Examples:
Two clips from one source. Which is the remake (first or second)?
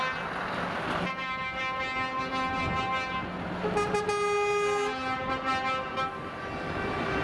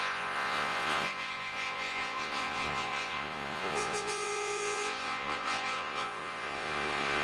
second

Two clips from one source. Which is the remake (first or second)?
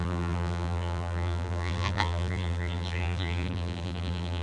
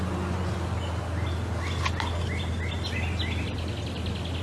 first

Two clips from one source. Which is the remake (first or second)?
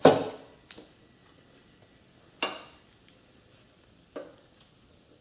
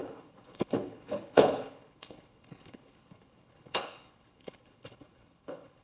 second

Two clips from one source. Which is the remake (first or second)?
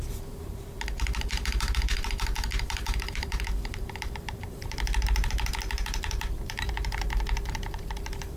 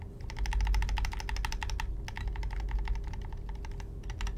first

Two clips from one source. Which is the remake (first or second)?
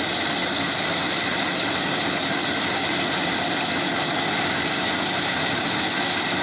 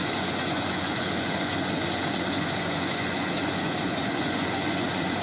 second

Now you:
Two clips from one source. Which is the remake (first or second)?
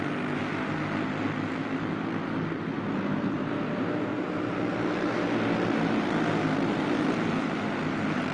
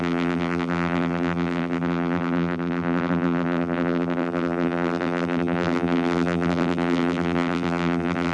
second